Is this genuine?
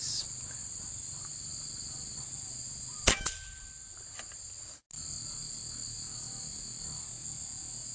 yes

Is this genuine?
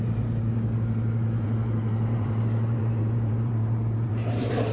no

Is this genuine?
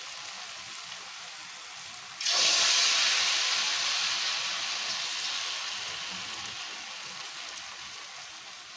yes